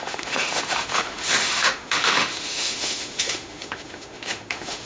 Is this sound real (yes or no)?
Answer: no